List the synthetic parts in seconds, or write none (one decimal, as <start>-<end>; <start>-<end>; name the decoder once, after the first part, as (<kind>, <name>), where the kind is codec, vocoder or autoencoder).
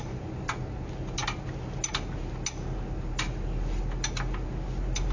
none